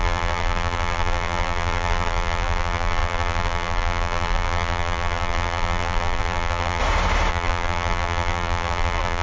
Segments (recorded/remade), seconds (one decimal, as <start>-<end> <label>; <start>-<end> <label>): 0.0-6.8 remade; 6.8-7.3 recorded; 7.3-9.2 remade